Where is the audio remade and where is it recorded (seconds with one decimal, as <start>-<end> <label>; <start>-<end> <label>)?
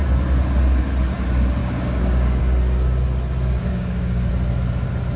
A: 0.0-1.6 recorded; 1.6-2.4 remade; 2.4-3.7 recorded; 3.7-4.3 remade; 4.3-5.2 recorded